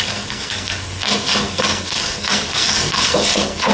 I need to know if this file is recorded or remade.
remade